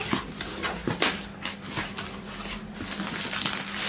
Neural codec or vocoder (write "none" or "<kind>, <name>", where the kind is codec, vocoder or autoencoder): none